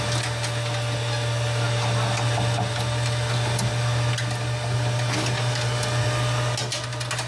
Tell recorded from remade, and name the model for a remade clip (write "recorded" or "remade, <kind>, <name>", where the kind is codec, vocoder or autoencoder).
recorded